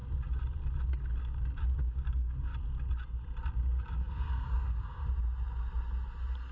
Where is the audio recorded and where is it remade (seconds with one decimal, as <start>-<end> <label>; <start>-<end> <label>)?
0.0-1.2 recorded; 1.2-2.5 remade; 2.5-3.5 recorded; 3.5-5.0 remade; 5.0-6.5 recorded